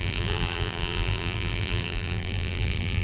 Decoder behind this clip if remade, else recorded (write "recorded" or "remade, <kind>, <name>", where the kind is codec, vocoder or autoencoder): remade, vocoder, BigVGAN v2